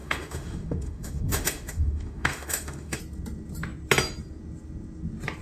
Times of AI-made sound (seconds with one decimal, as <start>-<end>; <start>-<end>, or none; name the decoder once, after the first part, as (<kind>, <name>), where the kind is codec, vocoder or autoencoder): 0.0-3.0 (autoencoder, DAC-VAE)

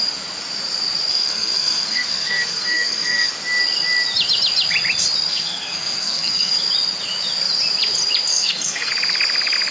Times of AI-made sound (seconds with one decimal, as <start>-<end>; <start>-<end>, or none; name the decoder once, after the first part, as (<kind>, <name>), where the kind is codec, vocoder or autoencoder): 1.1-3.3 (codec, SNAC); 5.3-6.6; 8.3-8.9

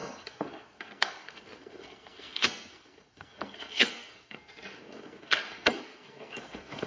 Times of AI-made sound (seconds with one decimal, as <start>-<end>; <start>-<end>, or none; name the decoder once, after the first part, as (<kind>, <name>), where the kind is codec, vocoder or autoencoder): 0.0-6.9 (codec, SNAC)